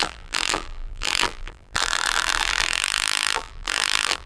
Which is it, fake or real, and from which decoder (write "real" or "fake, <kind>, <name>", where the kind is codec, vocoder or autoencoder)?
fake, vocoder, BigVGAN v2